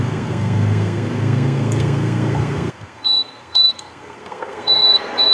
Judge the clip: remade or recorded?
remade